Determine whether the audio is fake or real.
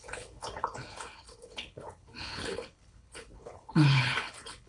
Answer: fake